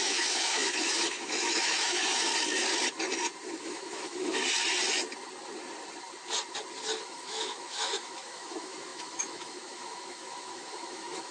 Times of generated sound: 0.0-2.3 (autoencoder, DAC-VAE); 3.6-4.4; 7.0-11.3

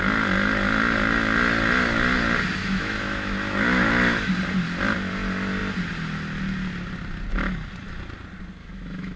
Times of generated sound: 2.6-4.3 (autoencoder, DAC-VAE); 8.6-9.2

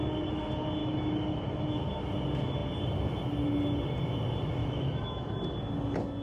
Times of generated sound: 0.8-1.8 (autoencoder, DAC-VAE); 4.6-5.3

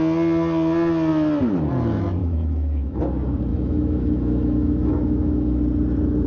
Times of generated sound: 2.2-3.0 (autoencoder, DAC-VAE); 3.5-5.6